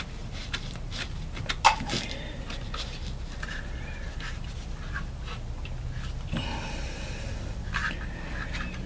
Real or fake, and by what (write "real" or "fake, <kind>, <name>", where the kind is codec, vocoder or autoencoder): real